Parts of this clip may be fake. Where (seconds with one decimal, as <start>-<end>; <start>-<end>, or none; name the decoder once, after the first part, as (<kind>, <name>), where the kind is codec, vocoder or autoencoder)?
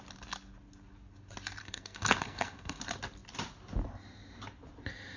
1.6-2.8 (codec, SNAC)